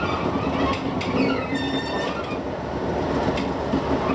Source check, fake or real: real